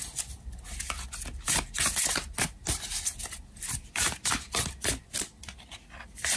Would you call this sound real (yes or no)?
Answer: yes